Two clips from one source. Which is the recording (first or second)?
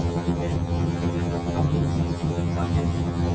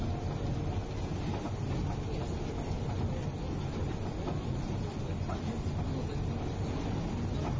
second